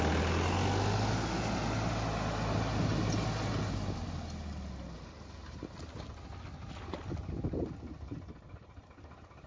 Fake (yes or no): no